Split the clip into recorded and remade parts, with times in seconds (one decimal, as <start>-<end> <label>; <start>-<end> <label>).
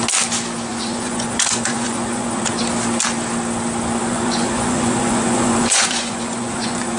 0.0-0.7 recorded; 0.7-2.6 remade; 2.6-4.0 recorded; 4.0-7.0 remade